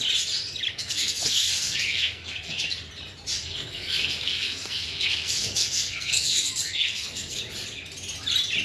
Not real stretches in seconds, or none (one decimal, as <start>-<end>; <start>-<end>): 0.7-2.6; 3.4-7.4